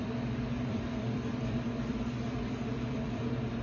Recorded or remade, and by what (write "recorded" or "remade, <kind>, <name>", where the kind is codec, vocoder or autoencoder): remade, vocoder, BigVGAN v2